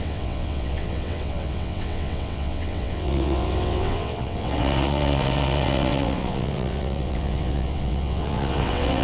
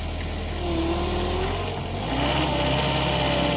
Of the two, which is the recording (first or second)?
second